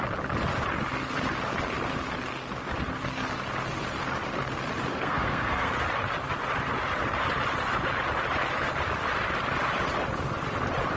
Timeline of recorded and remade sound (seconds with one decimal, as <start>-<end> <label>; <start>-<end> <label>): 0.0-4.9 recorded; 4.9-5.7 remade; 5.7-11.0 recorded

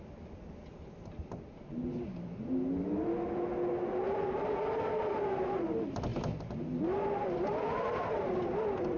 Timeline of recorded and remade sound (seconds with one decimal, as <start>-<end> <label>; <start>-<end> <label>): 0.0-9.0 recorded

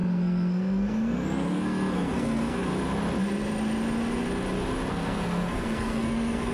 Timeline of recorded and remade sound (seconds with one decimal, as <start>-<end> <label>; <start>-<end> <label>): 0.0-2.7 remade; 2.7-4.9 recorded; 4.9-6.5 remade

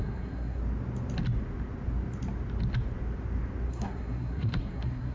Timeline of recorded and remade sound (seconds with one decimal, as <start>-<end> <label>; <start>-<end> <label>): 0.0-0.6 remade; 0.6-3.7 recorded; 3.7-5.1 remade

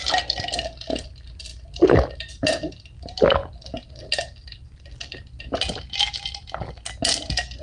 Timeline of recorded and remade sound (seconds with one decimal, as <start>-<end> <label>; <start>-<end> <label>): 0.0-7.6 recorded

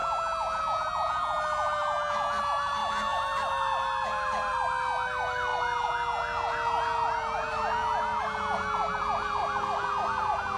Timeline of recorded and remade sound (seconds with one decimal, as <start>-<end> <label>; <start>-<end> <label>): 0.0-10.6 recorded

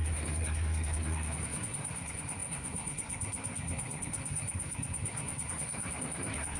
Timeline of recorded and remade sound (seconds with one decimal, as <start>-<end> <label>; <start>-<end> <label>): 0.0-6.6 remade